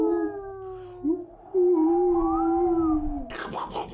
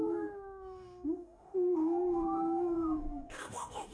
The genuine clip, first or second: first